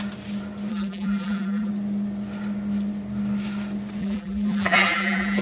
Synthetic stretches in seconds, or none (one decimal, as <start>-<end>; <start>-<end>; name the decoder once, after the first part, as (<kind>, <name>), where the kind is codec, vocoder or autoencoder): 0.7-1.7 (vocoder, BigVGAN v2); 4.0-5.4